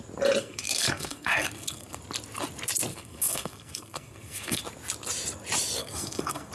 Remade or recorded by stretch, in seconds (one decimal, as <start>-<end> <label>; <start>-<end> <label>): 0.0-0.4 recorded; 0.4-2.0 remade; 2.0-2.9 recorded; 2.9-4.6 remade; 4.6-5.8 recorded; 5.8-6.5 remade